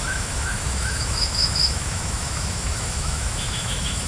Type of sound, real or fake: fake